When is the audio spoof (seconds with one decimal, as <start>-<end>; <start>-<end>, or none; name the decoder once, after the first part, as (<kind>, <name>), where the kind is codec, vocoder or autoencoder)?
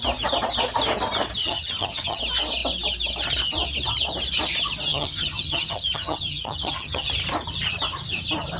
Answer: 1.4-2.2 (vocoder, HiFi-GAN); 4.9-7.1